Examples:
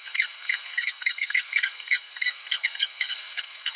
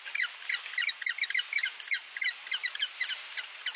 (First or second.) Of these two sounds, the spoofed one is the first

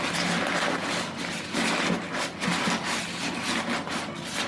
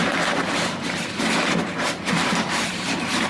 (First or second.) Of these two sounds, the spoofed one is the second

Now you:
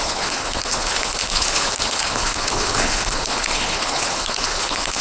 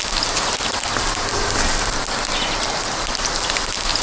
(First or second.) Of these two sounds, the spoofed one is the first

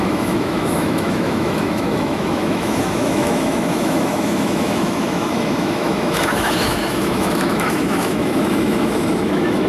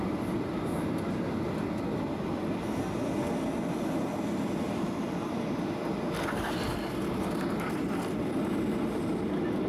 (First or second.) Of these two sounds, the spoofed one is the first